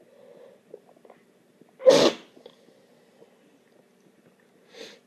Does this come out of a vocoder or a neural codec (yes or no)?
no